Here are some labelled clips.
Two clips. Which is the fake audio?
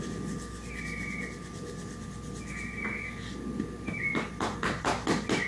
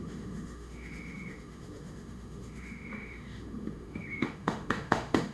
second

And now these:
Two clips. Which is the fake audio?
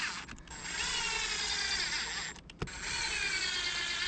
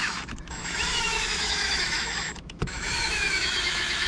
second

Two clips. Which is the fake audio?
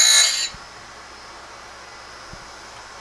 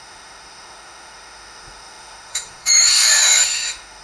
second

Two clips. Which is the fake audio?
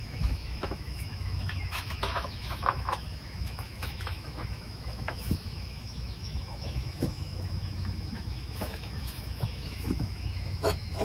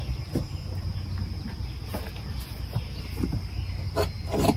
first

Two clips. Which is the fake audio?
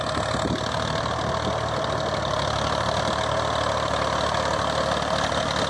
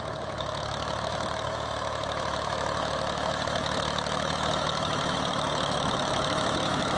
second